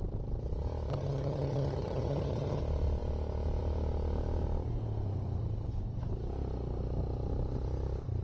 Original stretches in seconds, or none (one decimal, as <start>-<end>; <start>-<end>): 0.0-0.9; 2.6-8.2